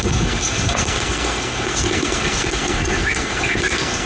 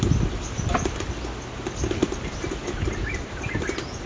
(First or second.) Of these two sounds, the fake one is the first